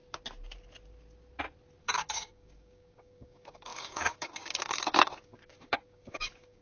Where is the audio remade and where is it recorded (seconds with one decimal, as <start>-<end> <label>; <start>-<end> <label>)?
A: 0.0-1.8 recorded; 1.8-6.6 remade